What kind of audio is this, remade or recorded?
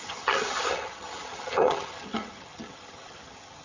remade